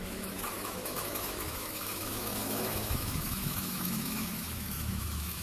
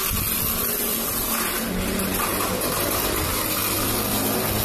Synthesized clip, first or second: first